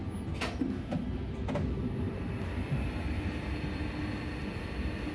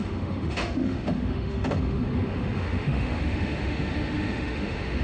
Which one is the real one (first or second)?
first